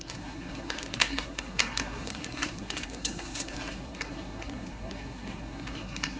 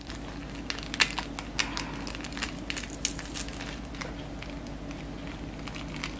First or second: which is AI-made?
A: first